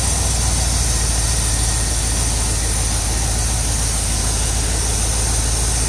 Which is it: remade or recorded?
recorded